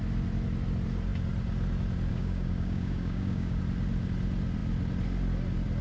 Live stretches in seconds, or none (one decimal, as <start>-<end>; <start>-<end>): 0.0-2.1; 3.6-5.8